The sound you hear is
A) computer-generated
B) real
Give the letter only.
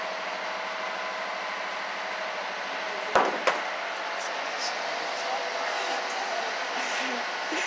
A